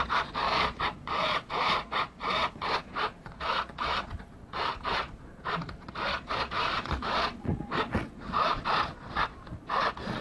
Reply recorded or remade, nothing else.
remade